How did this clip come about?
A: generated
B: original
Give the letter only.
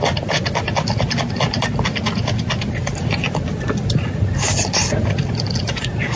B